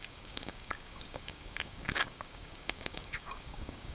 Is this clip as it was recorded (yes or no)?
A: no